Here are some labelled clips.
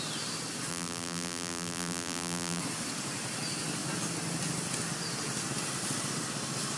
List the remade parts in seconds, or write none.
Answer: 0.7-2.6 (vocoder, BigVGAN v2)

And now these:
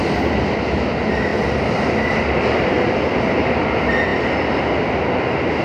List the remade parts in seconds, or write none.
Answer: none

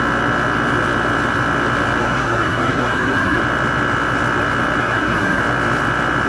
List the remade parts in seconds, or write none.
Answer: 2.0-3.4 (codec, SNAC); 4.8-5.4

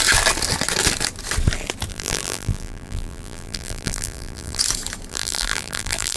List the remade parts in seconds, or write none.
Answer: 1.9-4.6 (vocoder, BigVGAN v2); 5.1-6.2

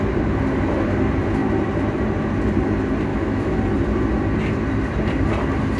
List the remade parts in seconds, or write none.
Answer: 3.1-3.6 (autoencoder, DAC-VAE)

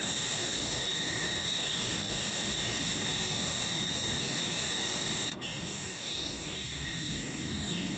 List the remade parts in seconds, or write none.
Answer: 0.0-8.0 (codec, DAC)

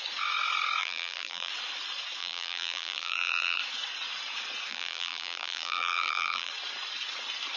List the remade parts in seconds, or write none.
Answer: 0.8-1.5 (vocoder, BigVGAN v2); 2.2-3.6; 4.7-6.5

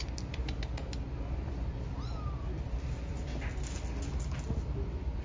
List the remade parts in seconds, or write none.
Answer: none